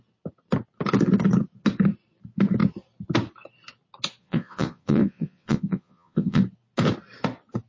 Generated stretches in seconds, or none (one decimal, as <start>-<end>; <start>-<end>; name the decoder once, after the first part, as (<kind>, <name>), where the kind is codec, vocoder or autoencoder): 4.2-6.4 (vocoder, Vocos)